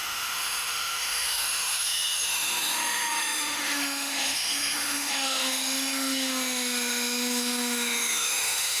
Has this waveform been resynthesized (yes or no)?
yes